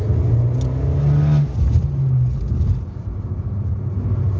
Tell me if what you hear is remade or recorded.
recorded